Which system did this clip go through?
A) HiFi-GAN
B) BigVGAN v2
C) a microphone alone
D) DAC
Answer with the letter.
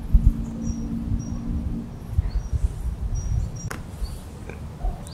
C